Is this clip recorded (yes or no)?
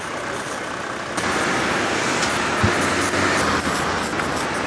yes